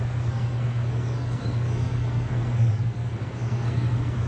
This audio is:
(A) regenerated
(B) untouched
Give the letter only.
A